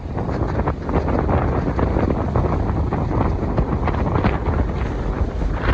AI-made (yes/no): no